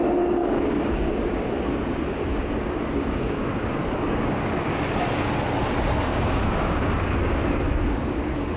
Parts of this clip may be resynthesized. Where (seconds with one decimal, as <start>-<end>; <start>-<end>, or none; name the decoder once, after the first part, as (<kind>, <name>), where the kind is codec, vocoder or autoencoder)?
0.4-4.8 (codec, DAC); 6.1-8.6